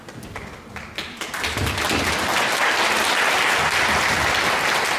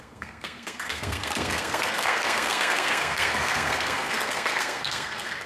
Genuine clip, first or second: first